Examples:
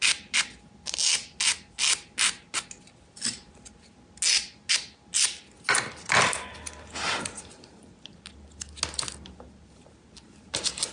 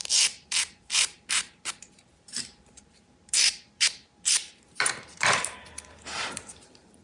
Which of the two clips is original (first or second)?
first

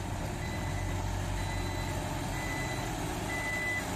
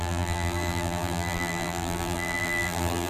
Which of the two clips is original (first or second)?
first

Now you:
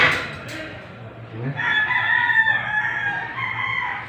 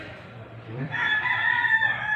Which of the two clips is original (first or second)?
first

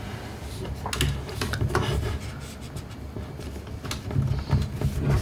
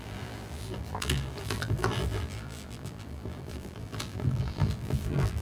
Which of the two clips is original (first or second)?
first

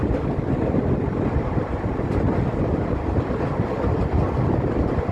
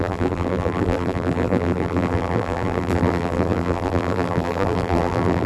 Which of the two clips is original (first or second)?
first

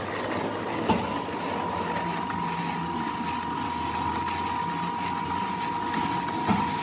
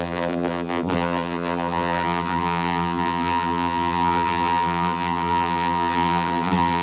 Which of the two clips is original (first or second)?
first